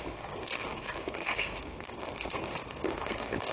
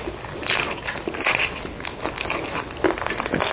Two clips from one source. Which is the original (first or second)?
second